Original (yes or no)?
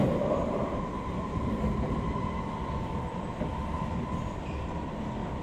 no